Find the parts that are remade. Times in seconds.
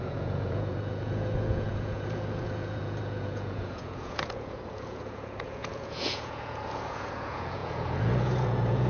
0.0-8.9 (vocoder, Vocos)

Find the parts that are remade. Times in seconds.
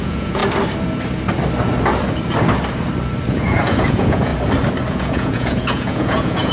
0.0-0.4 (vocoder, Vocos); 3.3-4.3; 4.9-6.5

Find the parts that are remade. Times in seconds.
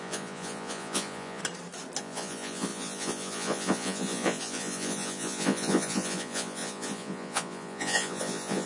0.0-1.4 (vocoder, Vocos); 2.0-8.7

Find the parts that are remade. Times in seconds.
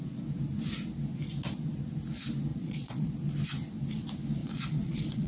2.5-3.1 (vocoder, Vocos); 4.4-5.3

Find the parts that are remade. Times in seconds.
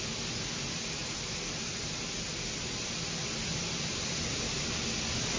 none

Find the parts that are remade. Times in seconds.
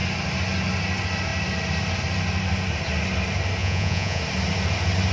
3.6-4.2 (vocoder, Vocos)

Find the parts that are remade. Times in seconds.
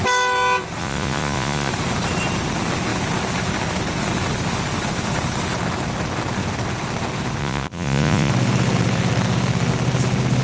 0.8-1.7 (vocoder, Vocos); 7.4-8.3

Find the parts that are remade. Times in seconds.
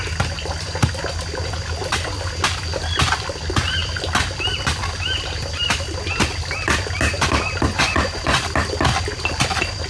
7.7-8.4 (vocoder, Vocos)